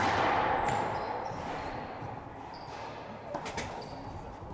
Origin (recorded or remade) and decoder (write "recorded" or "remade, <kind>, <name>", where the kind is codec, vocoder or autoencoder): recorded